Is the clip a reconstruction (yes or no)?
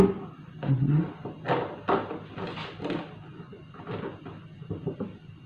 no